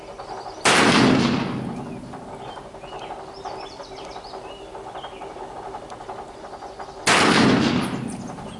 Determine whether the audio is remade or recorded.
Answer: recorded